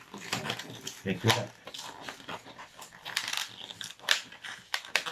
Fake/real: fake